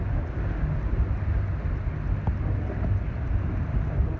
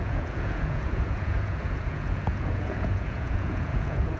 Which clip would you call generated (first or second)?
second